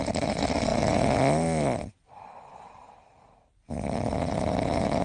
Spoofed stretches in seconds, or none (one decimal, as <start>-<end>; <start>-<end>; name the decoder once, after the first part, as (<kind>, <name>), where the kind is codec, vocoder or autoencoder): none

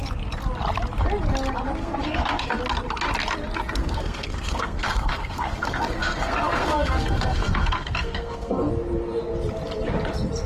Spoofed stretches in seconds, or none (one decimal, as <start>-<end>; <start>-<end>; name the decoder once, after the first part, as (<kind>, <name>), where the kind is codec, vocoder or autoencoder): 1.8-2.6 (codec, SNAC); 3.8-8.7

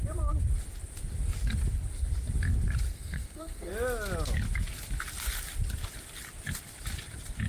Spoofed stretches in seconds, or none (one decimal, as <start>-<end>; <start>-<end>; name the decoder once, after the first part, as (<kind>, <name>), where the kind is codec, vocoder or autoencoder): 2.9-3.7 (codec, SNAC)

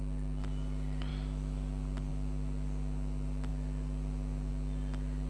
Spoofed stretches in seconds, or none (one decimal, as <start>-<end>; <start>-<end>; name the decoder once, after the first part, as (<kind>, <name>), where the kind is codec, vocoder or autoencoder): none

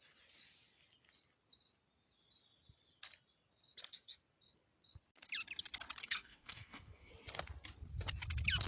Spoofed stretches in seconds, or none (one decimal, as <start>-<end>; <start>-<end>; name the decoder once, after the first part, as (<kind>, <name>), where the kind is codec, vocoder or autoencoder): 6.0-7.1 (codec, SNAC)

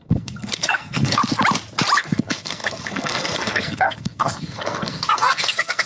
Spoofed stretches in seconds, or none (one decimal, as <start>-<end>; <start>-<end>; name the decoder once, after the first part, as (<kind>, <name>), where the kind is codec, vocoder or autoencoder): 0.0-1.2 (codec, SNAC); 2.0-5.9

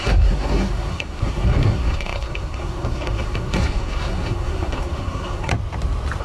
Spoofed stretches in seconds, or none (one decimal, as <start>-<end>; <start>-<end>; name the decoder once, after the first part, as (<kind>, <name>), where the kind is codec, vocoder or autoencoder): 0.0-5.5 (codec, SNAC)

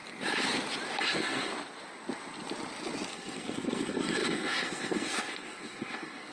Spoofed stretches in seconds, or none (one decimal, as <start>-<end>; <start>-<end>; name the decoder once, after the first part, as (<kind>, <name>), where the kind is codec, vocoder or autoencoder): 1.0-1.5 (codec, SNAC); 3.1-6.3